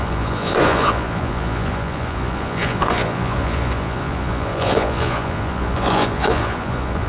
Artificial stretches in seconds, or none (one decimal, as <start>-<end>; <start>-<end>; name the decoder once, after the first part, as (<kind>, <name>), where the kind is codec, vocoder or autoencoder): 0.0-7.1 (vocoder, Vocos)